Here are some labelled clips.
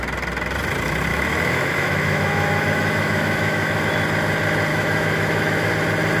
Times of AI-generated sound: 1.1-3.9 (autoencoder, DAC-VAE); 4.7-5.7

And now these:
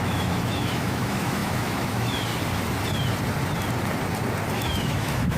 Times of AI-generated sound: 0.0-2.3 (autoencoder, DAC-VAE); 4.5-5.4

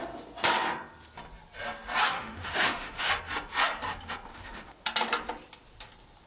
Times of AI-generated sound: 2.0-3.1 (autoencoder, DAC-VAE); 4.3-4.8

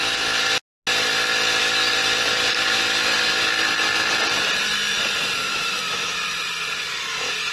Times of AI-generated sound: 5.4-6.5 (autoencoder, DAC-VAE)

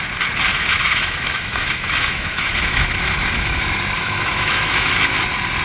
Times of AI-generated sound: 0.5-3.6 (autoencoder, DAC-VAE); 4.0-4.9

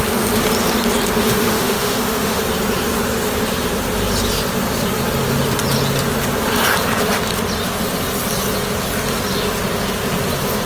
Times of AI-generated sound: 1.2-2.4 (autoencoder, DAC-VAE)

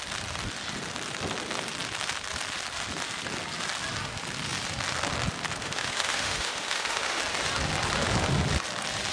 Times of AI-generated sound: 5.6-7.2 (autoencoder, DAC-VAE)

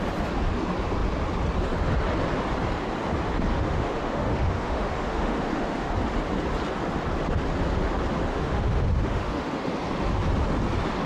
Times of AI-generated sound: 3.5-5.9 (autoencoder, DAC-VAE); 8.3-9.7